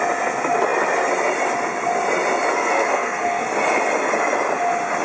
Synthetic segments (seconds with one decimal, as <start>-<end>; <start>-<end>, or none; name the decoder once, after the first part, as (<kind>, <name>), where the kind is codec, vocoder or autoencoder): 2.5-3.4 (codec, SNAC)